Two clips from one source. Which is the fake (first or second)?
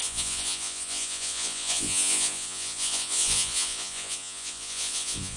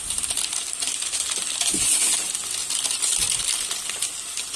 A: first